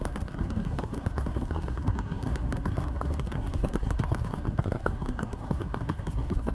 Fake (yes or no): yes